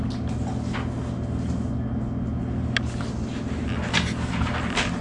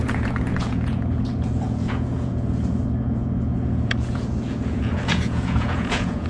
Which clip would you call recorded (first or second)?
first